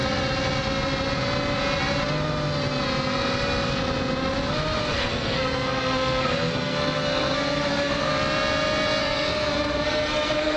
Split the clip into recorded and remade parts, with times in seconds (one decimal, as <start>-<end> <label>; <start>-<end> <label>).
0.0-4.9 recorded; 4.9-8.1 remade; 8.1-9.0 recorded; 9.0-10.6 remade